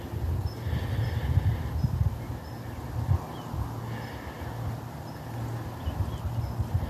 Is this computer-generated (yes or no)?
no